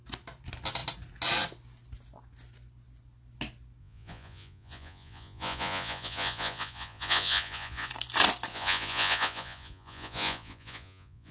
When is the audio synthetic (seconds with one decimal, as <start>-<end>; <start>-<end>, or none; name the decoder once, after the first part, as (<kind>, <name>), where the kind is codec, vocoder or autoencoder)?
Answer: 3.8-7.9 (vocoder, Vocos); 8.5-11.3